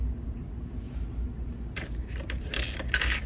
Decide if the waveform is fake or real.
fake